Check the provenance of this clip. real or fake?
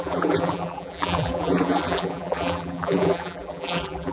fake